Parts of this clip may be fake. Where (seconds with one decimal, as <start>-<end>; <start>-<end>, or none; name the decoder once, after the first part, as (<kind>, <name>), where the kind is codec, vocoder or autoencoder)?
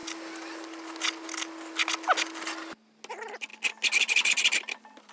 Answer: none